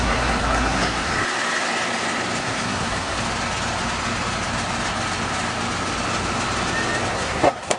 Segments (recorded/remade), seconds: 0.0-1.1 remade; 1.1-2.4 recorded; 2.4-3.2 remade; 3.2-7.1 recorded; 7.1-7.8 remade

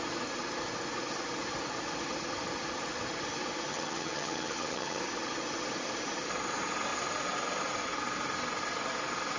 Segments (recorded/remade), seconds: 0.0-3.7 recorded; 3.7-5.0 remade; 5.0-9.4 recorded

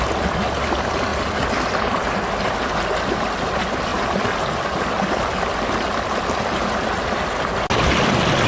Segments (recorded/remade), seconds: 0.0-8.5 recorded

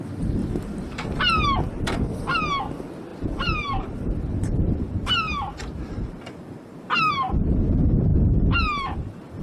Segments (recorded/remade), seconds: 0.0-0.4 recorded; 0.4-1.2 remade; 1.2-3.1 recorded; 3.1-7.1 remade; 7.1-8.1 recorded; 8.1-9.4 remade